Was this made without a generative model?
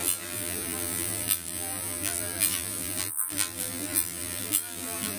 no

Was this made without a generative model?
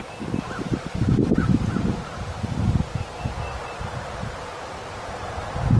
yes